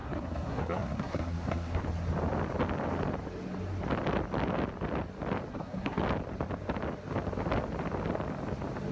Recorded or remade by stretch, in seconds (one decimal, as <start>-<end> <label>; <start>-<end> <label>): 0.0-1.8 remade; 1.8-5.5 recorded; 5.5-6.0 remade; 6.0-8.9 recorded